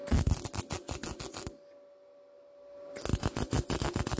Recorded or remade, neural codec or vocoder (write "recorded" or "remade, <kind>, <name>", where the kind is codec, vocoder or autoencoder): recorded